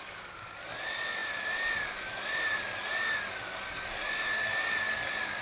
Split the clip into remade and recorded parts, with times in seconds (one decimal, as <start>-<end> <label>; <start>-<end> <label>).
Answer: 0.0-5.4 recorded